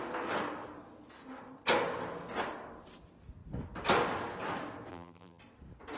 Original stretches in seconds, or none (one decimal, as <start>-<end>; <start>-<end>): 0.0-4.9; 5.4-6.0